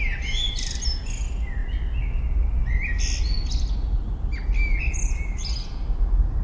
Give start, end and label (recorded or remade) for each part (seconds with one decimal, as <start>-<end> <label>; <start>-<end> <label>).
0.0-6.4 recorded